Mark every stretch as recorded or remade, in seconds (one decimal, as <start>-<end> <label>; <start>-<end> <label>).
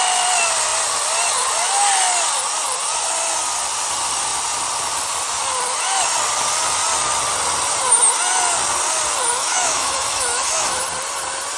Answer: 0.0-9.4 recorded; 9.4-10.8 remade; 10.8-11.6 recorded